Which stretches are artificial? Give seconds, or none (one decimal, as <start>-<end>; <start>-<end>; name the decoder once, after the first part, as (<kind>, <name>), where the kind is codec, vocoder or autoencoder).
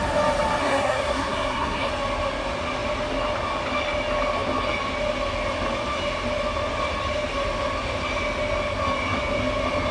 0.6-1.9 (codec, SNAC)